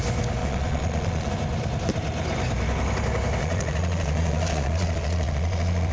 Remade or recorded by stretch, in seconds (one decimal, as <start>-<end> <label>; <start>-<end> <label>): 0.0-0.4 recorded; 0.4-1.3 remade; 1.3-3.4 recorded; 3.4-5.9 remade